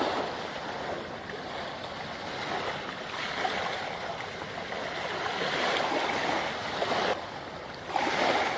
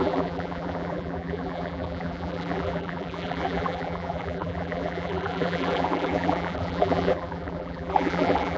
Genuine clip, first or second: first